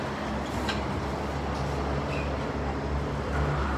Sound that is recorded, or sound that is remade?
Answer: recorded